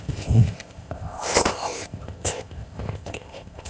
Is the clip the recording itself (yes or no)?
no